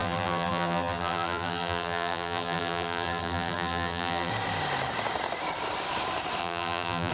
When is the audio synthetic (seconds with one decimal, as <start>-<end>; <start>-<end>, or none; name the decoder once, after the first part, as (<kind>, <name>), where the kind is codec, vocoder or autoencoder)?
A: 0.0-4.3 (vocoder, BigVGAN v2); 6.4-7.1